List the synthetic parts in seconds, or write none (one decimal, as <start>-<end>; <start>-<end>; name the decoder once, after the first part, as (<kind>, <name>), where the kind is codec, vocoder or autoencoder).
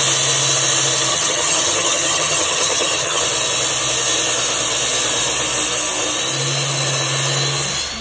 1.1-3.2 (vocoder, HiFi-GAN)